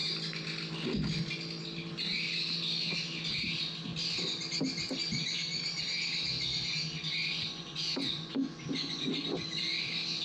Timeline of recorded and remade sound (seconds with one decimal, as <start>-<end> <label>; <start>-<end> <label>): 0.0-7.2 recorded; 7.2-9.2 remade; 9.2-10.2 recorded